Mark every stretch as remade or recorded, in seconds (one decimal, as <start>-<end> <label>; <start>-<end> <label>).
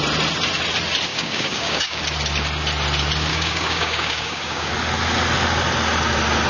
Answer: 0.0-1.1 recorded; 1.1-2.0 remade; 2.0-3.3 recorded; 3.3-4.7 remade; 4.7-6.5 recorded